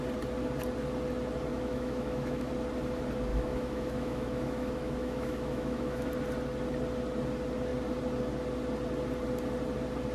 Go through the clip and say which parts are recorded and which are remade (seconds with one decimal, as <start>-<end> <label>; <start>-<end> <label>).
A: 0.0-1.5 recorded; 1.5-2.5 remade; 2.5-3.3 recorded; 3.3-6.1 remade; 6.1-10.1 recorded